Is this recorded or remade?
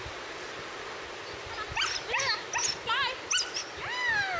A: recorded